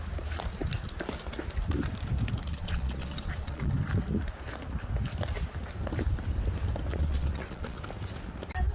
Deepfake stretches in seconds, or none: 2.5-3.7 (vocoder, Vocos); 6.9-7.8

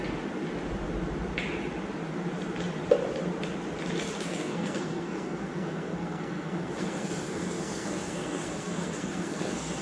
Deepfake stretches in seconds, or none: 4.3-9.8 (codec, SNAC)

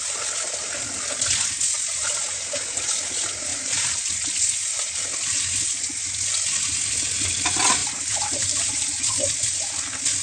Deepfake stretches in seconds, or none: 3.5-4.2 (vocoder, BigVGAN v2); 7.8-9.0

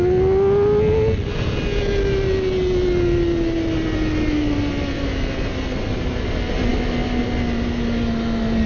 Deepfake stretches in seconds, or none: none

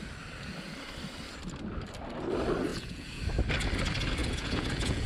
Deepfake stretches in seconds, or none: 2.7-3.2 (vocoder, Vocos); 4.2-5.1

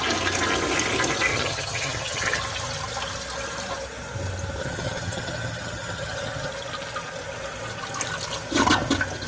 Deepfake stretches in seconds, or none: 1.3-2.4 (vocoder, HiFi-GAN); 4.6-6.5

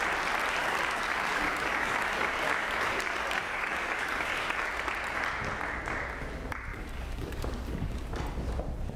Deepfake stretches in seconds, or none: 0.6-4.7 (codec, DAC); 6.7-8.1

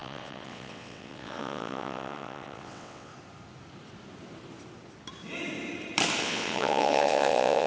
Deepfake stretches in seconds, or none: 0.0-3.1 (vocoder, WaveNeXt); 6.2-7.7